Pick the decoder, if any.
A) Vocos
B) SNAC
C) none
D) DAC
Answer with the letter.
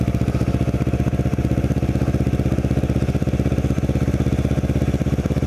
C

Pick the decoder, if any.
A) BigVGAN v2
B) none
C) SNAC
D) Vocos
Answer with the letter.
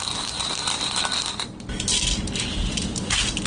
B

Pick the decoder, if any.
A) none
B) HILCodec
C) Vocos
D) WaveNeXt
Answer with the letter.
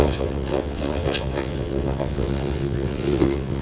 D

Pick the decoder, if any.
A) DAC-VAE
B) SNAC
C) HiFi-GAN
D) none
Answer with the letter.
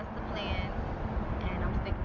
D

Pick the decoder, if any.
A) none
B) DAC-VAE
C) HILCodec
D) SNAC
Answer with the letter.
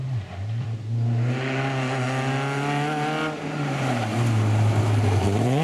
A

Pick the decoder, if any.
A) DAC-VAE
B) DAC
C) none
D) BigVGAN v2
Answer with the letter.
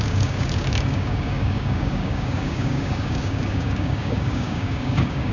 B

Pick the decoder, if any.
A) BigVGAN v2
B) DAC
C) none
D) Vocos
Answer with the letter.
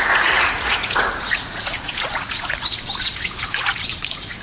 D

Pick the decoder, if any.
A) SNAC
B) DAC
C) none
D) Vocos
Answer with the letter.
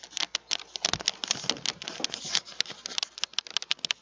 C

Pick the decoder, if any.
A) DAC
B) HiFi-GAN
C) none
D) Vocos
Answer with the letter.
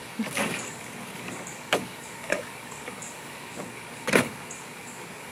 A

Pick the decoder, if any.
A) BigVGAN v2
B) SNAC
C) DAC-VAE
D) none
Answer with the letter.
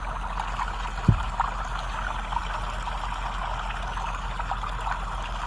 D